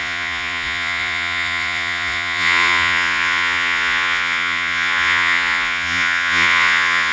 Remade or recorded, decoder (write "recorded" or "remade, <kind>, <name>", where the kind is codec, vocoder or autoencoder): remade, vocoder, Vocos